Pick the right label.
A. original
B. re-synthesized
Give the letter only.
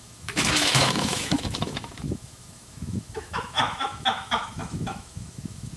B